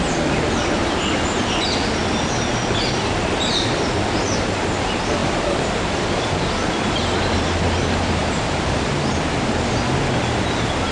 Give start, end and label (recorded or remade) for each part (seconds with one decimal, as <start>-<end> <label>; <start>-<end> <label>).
0.0-0.8 recorded; 0.8-2.3 remade; 2.3-5.2 recorded; 5.2-6.5 remade; 6.5-8.2 recorded; 8.2-9.1 remade; 9.1-10.9 recorded